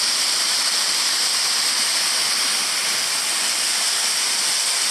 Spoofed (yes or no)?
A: no